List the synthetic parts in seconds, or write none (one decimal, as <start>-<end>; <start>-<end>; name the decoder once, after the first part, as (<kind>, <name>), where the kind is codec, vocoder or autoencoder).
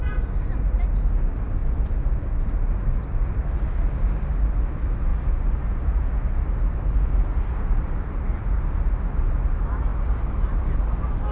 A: none